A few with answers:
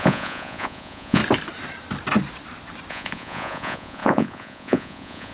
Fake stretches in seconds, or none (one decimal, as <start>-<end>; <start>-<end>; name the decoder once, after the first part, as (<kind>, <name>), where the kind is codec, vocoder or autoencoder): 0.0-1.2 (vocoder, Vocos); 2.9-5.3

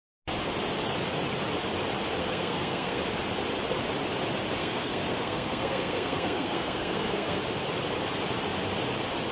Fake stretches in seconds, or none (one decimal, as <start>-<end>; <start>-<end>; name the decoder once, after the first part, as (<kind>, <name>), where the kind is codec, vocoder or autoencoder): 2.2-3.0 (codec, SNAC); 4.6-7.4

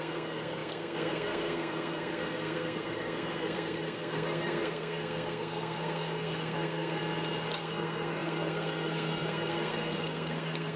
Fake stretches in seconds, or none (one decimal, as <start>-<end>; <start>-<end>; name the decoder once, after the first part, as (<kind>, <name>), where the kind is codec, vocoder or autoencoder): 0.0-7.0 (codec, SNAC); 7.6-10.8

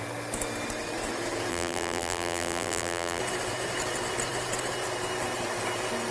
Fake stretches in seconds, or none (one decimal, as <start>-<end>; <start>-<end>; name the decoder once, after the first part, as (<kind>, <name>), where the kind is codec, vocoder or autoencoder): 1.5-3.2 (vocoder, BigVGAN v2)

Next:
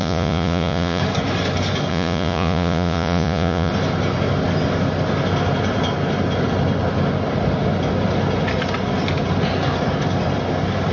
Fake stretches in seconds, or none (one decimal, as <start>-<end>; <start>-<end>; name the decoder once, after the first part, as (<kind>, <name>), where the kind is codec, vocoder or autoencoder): 0.0-1.0 (vocoder, Vocos); 1.9-3.7